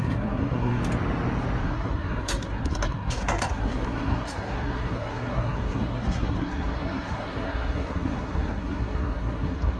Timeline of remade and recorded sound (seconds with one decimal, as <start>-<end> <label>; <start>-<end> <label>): 0.0-0.8 remade; 0.8-1.6 recorded; 1.6-9.8 remade